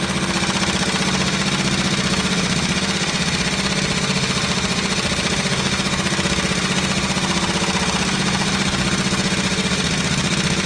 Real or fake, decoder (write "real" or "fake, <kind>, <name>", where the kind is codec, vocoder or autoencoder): real